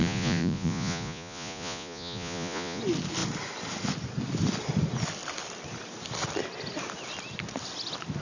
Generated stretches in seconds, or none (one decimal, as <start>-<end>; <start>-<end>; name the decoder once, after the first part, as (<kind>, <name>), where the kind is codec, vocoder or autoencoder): 0.0-2.8 (vocoder, Vocos)